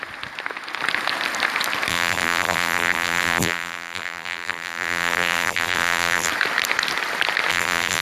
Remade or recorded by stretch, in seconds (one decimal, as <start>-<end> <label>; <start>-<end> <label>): 0.0-1.9 recorded; 1.9-6.3 remade; 6.3-7.5 recorded; 7.5-8.0 remade